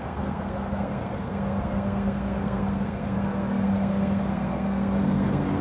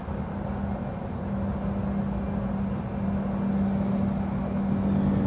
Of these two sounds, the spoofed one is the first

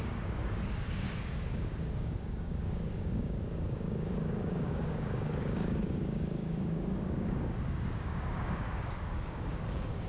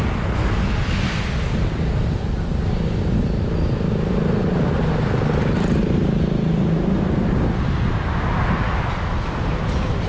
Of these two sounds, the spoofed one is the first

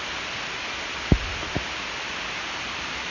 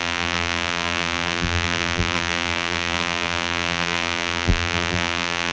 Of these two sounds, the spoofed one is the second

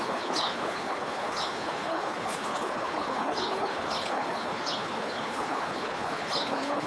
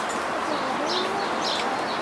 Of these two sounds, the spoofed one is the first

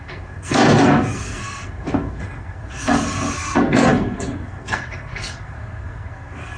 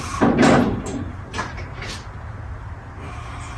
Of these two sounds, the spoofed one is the first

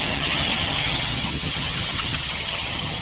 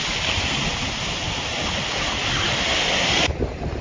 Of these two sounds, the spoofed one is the first